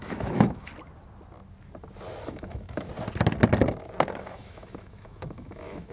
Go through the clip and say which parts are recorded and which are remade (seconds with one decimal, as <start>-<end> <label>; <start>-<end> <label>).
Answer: 0.0-0.7 remade; 0.7-2.2 recorded; 2.2-2.9 remade; 2.9-4.2 recorded; 4.2-5.9 remade